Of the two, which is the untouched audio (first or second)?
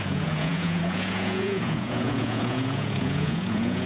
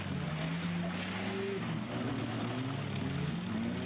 second